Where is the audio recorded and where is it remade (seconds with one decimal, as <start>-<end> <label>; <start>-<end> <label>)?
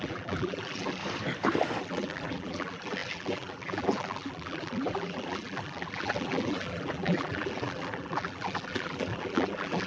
0.0-1.0 remade; 1.0-1.8 recorded; 1.8-9.9 remade